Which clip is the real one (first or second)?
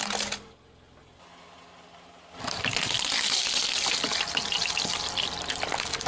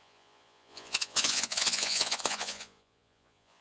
first